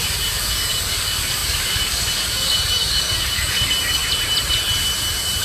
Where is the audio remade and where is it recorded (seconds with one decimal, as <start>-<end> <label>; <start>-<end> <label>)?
0.0-4.0 remade; 4.0-5.4 recorded